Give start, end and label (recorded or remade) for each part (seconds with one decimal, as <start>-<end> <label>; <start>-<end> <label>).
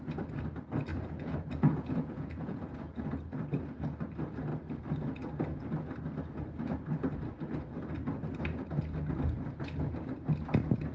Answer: 0.0-0.9 recorded; 0.9-2.7 remade; 2.7-10.9 recorded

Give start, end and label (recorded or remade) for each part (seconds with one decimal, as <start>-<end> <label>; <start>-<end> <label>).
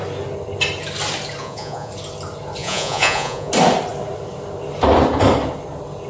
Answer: 0.0-1.4 recorded; 1.4-1.9 remade; 1.9-2.6 recorded; 2.6-3.5 remade; 3.5-6.1 recorded